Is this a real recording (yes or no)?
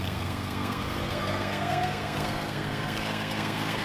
no